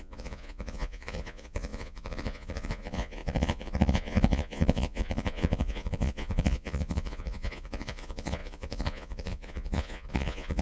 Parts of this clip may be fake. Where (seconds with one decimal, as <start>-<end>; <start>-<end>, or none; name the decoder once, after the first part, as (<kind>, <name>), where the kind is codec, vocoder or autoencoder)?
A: 0.0-10.6 (vocoder, Vocos)